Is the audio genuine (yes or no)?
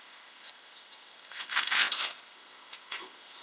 no